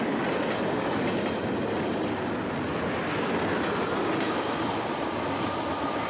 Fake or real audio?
real